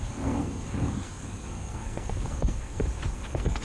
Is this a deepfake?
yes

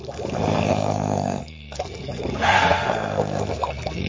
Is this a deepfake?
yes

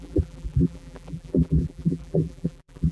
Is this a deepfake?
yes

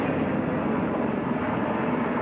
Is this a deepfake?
no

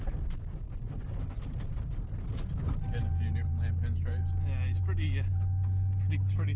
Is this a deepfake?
no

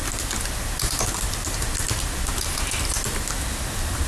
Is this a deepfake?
no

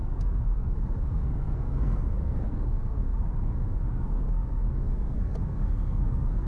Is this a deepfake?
yes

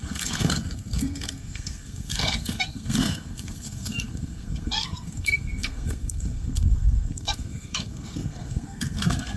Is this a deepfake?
yes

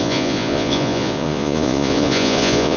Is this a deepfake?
yes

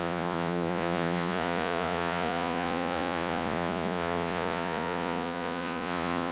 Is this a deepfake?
yes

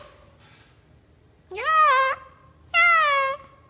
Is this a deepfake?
no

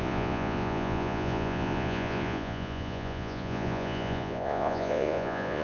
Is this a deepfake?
yes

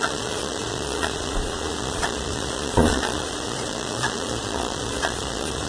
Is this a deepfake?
yes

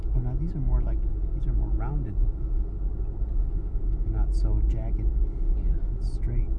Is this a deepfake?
no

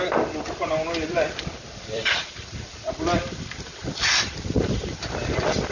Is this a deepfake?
yes